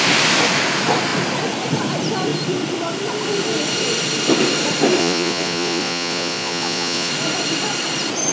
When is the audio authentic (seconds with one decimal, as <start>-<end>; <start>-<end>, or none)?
0.0-5.0; 7.1-8.3